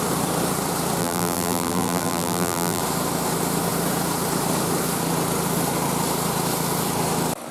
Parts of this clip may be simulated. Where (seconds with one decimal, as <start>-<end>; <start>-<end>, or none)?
1.0-2.8